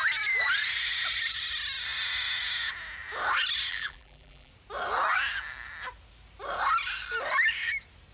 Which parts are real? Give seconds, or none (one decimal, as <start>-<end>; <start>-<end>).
0.0-3.7; 4.5-8.1